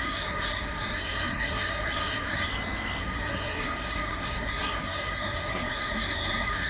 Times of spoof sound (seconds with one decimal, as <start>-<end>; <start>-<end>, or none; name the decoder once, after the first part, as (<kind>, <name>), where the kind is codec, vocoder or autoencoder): 0.0-2.5 (codec, SNAC); 3.0-6.7